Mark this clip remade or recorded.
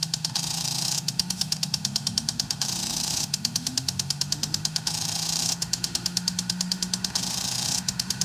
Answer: remade